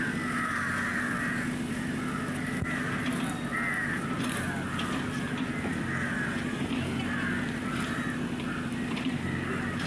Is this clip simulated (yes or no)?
no